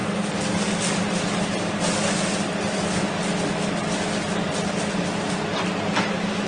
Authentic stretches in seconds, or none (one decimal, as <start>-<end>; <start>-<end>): 0.0-6.5